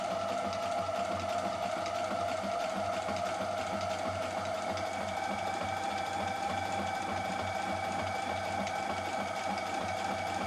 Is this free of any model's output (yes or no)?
yes